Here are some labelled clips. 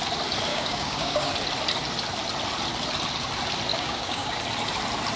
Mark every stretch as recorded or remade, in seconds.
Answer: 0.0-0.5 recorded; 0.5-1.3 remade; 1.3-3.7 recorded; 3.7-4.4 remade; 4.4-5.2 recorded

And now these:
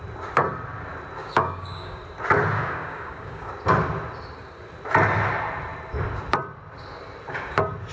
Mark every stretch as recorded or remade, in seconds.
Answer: 0.0-1.2 recorded; 1.2-2.0 remade; 2.0-2.6 recorded; 2.6-3.5 remade; 3.5-7.9 recorded

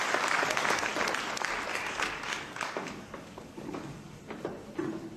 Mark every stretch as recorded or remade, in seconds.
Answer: 0.0-0.9 remade; 0.9-1.7 recorded; 1.7-4.2 remade; 4.2-5.2 recorded

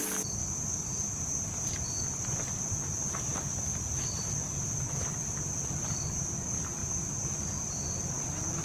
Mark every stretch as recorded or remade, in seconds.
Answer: 0.0-8.6 recorded

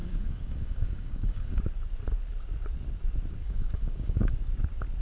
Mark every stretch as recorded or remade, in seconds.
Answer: 0.0-1.6 remade; 1.6-3.4 recorded; 3.4-4.3 remade; 4.3-5.0 recorded

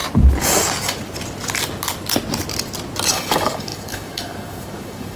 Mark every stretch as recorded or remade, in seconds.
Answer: 0.0-3.1 recorded; 3.1-5.2 remade